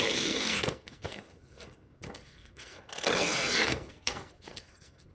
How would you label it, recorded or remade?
remade